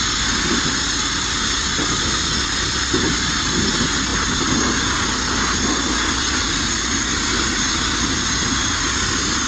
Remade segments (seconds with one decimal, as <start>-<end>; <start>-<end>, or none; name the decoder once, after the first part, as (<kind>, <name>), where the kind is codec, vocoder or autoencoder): none